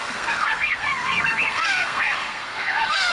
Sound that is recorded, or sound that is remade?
remade